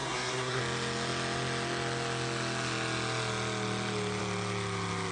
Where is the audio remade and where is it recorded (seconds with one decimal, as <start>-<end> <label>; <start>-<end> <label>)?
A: 0.0-0.6 remade; 0.6-5.1 recorded